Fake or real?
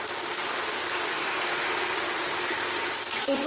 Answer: real